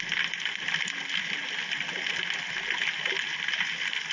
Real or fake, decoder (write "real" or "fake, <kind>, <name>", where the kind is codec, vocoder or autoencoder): real